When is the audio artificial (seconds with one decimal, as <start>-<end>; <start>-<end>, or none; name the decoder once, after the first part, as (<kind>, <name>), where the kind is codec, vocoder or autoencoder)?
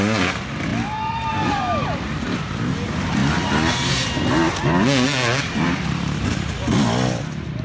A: none